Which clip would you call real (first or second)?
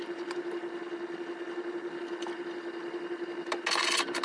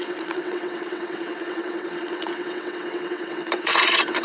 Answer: first